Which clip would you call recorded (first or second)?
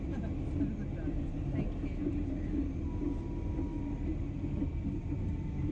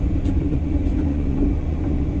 first